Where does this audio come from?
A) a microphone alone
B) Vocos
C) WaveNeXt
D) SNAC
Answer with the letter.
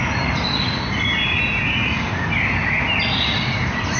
A